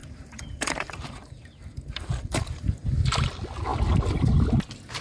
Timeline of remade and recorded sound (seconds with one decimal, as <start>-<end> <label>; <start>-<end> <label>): 0.0-2.9 remade; 2.9-5.0 recorded